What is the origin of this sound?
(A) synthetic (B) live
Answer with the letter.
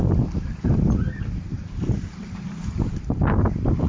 B